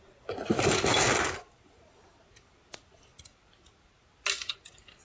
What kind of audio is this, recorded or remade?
recorded